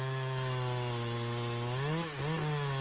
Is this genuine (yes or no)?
yes